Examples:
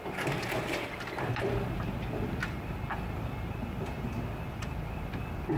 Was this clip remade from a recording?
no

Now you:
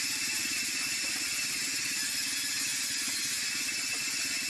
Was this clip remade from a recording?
no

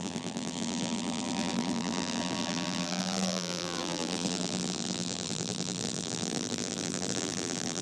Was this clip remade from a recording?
yes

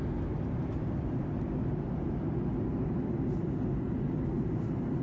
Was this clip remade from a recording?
no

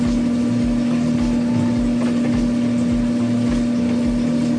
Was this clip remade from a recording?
no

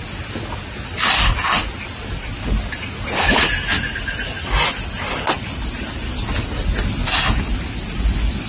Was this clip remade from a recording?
no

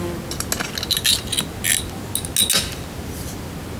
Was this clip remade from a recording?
no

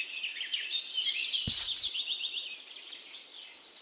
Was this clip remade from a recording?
no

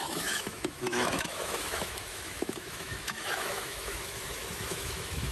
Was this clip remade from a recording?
yes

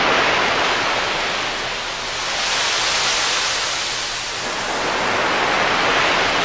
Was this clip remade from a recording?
no